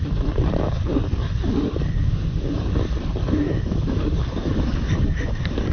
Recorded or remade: remade